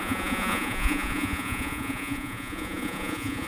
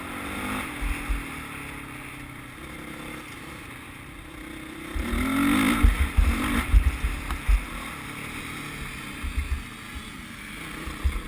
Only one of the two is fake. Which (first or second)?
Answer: first